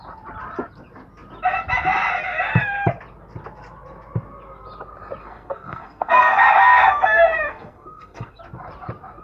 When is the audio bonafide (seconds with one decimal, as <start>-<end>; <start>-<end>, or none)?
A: 0.0-5.2; 8.4-9.2